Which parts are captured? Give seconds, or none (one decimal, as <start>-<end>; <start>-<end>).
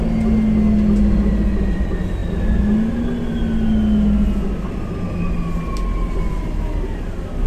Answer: 0.0-7.5